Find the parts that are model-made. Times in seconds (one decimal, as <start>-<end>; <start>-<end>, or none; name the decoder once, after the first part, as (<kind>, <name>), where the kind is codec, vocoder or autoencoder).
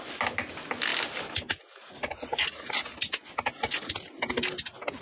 none